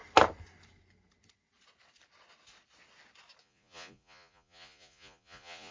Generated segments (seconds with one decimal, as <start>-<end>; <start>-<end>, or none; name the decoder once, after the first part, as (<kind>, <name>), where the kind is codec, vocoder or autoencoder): 3.4-5.7 (vocoder, Vocos)